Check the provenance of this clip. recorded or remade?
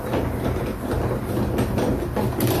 recorded